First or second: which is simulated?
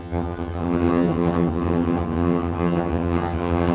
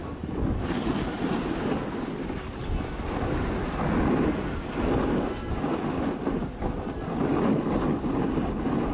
first